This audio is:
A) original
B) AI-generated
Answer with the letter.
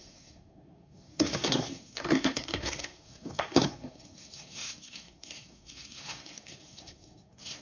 B